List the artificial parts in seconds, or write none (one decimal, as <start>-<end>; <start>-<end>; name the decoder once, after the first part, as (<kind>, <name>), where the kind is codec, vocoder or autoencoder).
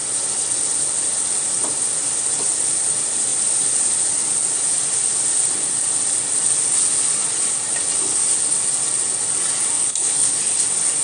9.7-10.3 (codec, SNAC)